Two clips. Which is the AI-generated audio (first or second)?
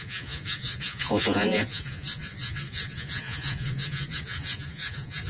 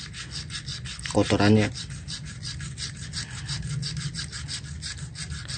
first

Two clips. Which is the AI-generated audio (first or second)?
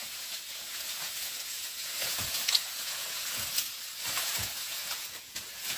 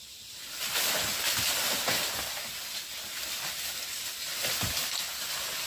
first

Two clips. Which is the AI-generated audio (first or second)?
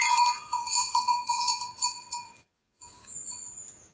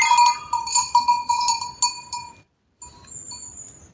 first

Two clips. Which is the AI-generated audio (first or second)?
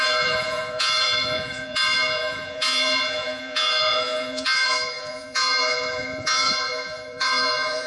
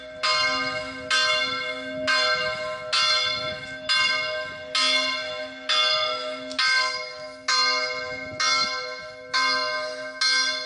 first